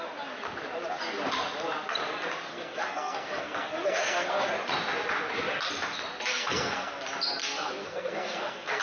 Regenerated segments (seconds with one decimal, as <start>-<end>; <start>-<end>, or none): 2.5-4.5; 6.3-6.9; 7.4-8.8

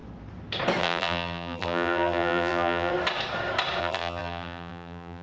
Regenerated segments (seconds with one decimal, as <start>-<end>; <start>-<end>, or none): 0.8-2.9; 3.8-5.2

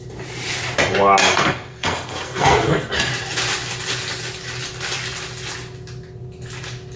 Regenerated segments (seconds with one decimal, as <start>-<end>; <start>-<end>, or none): 1.2-3.1

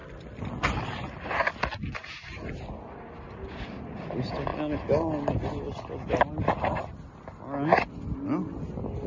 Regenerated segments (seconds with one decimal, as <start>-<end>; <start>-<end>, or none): none